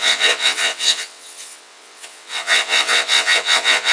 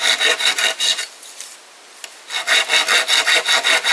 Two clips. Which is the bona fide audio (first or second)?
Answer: second